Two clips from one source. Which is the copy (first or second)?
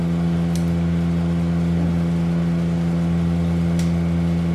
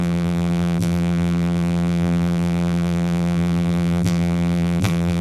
second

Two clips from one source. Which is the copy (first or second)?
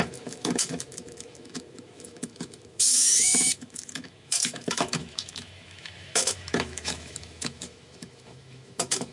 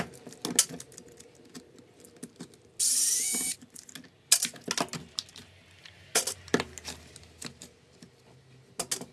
first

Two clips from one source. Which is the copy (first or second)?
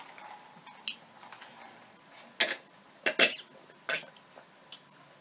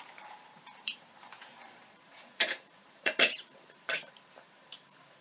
second